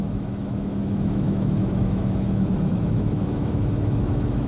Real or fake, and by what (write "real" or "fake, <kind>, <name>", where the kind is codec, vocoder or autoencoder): fake, autoencoder, DAC-VAE